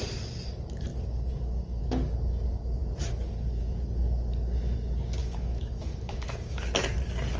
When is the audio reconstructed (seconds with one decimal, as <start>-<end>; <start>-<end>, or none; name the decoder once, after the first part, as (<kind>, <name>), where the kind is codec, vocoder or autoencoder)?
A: 5.2-6.7 (autoencoder, DAC-VAE)